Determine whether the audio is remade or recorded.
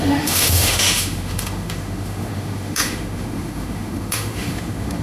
remade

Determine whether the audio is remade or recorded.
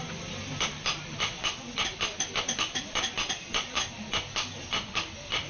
recorded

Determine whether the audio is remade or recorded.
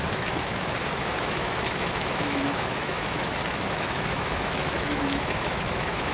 remade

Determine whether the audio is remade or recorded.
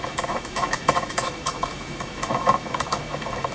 remade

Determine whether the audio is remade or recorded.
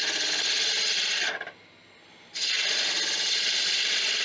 recorded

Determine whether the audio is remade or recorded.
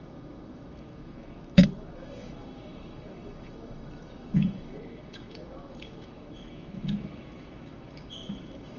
remade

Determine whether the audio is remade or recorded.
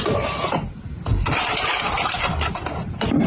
recorded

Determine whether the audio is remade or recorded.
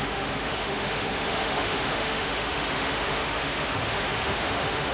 remade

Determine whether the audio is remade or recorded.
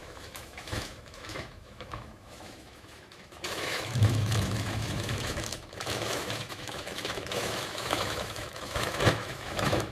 remade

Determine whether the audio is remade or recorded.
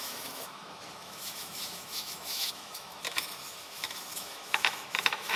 remade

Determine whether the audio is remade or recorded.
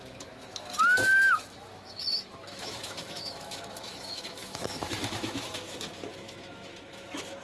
remade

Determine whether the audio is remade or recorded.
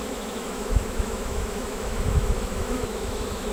remade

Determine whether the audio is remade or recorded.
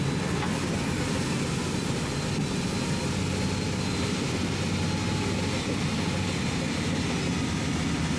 recorded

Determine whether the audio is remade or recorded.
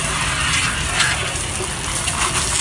recorded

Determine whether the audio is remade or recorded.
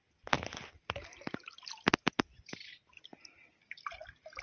recorded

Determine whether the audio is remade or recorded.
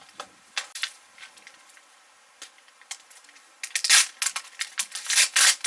recorded